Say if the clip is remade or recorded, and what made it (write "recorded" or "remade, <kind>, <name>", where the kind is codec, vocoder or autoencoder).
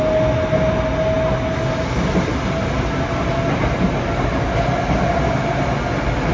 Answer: recorded